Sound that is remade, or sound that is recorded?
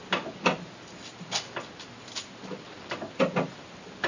recorded